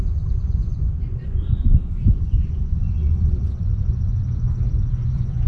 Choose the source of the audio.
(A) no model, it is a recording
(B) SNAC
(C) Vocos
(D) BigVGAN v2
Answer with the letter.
C